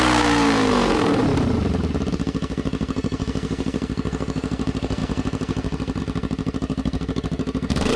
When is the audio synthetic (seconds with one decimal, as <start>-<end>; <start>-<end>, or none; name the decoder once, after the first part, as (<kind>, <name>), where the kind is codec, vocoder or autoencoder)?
0.0-1.2 (codec, SNAC); 2.1-8.0